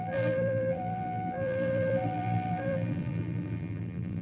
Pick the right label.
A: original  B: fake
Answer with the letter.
B